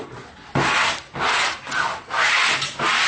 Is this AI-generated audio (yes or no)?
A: no